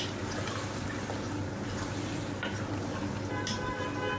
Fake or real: real